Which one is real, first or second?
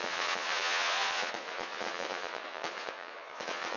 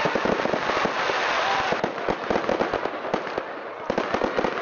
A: second